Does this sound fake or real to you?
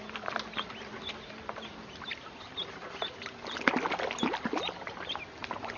real